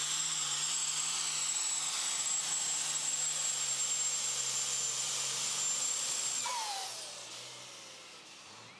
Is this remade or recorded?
recorded